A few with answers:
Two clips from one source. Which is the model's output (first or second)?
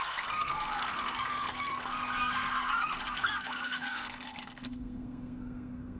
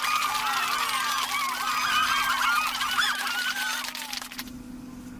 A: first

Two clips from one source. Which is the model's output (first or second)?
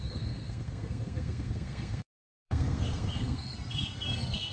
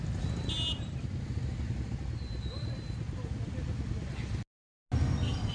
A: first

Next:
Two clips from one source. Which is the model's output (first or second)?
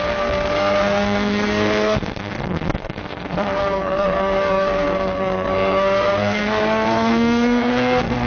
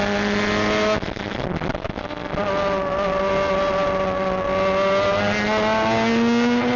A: first